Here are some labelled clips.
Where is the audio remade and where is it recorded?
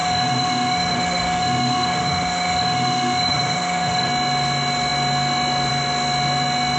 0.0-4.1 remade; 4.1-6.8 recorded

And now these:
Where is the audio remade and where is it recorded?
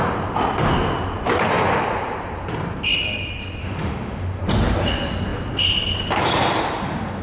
0.0-3.6 recorded; 3.6-4.4 remade; 4.4-7.2 recorded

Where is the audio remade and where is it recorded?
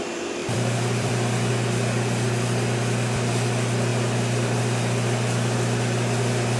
0.0-0.4 recorded; 0.4-1.5 remade; 1.5-6.6 recorded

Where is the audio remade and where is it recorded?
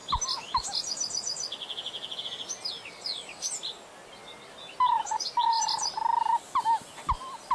0.0-3.6 remade; 3.6-5.6 recorded; 5.6-7.5 remade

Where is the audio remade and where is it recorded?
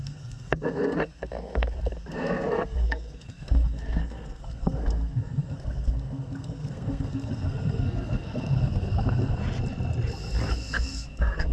0.0-9.4 remade; 9.4-10.5 recorded; 10.5-11.5 remade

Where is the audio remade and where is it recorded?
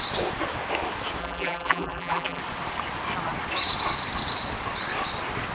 0.0-1.2 recorded; 1.2-2.4 remade; 2.4-5.5 recorded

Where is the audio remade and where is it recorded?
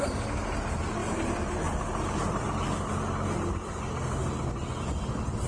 0.0-5.5 recorded